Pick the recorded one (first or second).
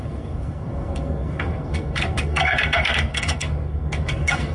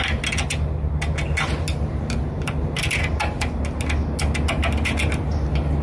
second